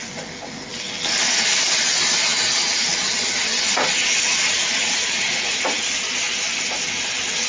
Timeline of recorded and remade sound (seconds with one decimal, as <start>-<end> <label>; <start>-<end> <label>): 0.0-4.3 recorded; 4.3-5.7 remade; 5.7-7.5 recorded